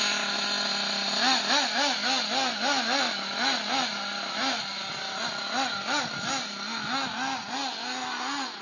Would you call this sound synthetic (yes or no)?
no